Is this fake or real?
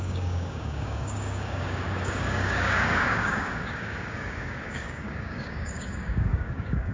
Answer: fake